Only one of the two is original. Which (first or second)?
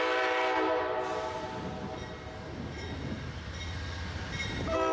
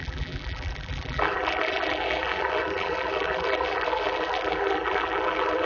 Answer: first